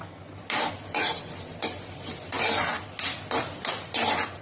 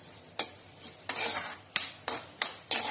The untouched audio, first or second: first